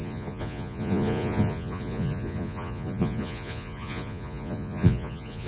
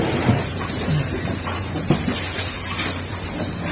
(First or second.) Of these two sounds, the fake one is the first